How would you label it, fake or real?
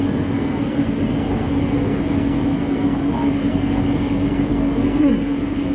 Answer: fake